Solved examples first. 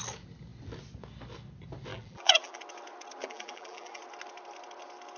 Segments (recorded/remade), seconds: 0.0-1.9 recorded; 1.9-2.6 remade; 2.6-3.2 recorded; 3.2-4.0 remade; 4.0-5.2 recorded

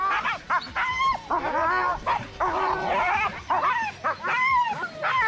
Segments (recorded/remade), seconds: 0.0-2.2 recorded; 2.2-4.6 remade; 4.6-5.3 recorded

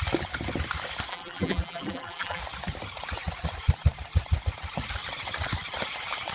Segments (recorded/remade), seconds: 0.0-1.1 recorded; 1.1-2.4 remade; 2.4-6.3 recorded

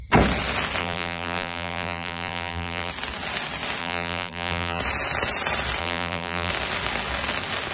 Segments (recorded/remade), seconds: 0.0-0.8 recorded; 0.8-2.9 remade; 2.9-3.8 recorded; 3.8-4.8 remade; 4.8-5.8 recorded; 5.8-6.5 remade; 6.5-7.7 recorded

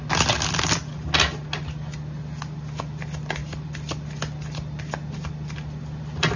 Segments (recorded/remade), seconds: 0.0-6.4 recorded